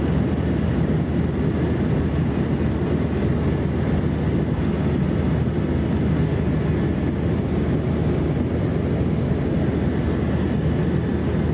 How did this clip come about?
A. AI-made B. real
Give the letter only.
B